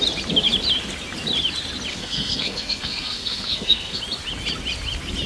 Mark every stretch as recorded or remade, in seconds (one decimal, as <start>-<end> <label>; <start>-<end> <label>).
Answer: 0.0-1.9 recorded; 1.9-4.0 remade; 4.0-5.3 recorded